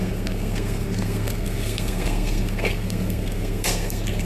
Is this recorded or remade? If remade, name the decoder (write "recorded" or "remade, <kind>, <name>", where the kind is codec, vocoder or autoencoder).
remade, codec, SNAC